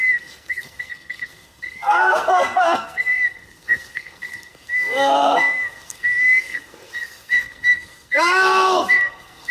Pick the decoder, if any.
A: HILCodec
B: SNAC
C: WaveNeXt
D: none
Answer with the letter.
B